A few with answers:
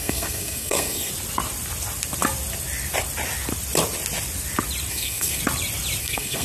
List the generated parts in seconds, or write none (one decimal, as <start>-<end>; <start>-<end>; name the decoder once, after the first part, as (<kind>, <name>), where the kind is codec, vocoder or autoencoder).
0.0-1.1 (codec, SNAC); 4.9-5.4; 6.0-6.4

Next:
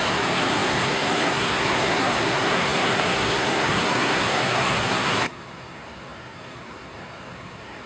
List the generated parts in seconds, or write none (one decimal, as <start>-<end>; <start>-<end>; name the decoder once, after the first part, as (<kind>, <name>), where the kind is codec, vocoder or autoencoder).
0.0-7.9 (codec, SNAC)

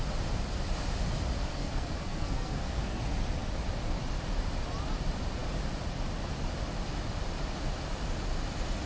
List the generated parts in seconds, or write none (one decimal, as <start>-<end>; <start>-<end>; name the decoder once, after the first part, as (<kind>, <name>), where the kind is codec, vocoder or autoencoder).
1.5-3.0 (codec, SNAC)